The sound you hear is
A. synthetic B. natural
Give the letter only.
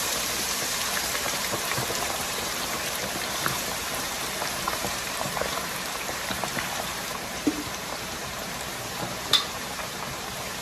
A